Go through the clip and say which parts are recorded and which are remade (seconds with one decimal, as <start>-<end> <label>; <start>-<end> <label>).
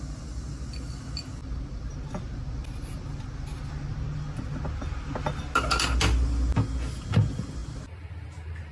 0.0-8.7 recorded